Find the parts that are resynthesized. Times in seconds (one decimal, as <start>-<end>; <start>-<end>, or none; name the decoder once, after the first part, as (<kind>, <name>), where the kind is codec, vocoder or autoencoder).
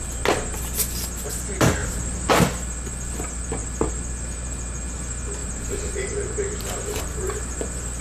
1.8-2.3 (vocoder, BigVGAN v2); 5.4-7.0